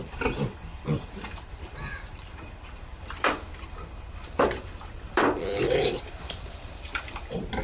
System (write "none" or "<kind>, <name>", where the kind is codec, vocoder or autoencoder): vocoder, BigVGAN v2